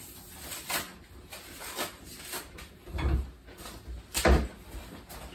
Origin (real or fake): real